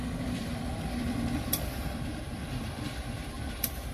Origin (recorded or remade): remade